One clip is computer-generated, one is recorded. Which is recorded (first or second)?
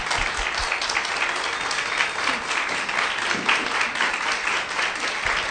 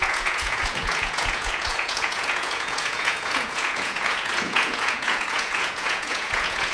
first